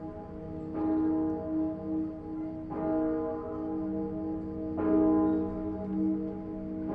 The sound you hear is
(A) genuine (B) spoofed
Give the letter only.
A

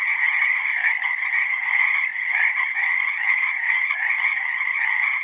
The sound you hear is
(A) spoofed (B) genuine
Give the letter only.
A